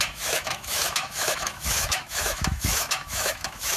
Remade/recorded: remade